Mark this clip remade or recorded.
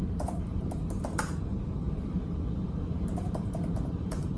remade